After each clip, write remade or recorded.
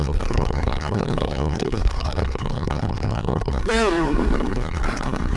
remade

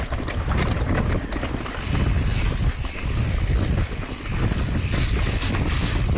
recorded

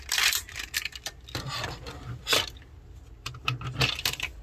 recorded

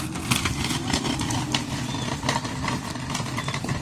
recorded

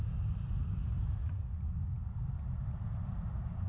recorded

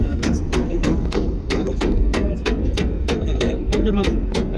remade